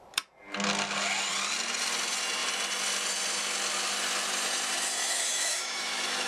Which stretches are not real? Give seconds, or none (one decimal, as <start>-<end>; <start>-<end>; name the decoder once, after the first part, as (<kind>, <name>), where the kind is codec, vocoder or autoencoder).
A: 5.0-6.3 (autoencoder, DAC-VAE)